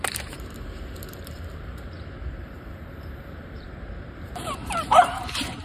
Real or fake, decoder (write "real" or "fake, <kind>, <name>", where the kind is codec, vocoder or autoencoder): fake, vocoder, BigVGAN v2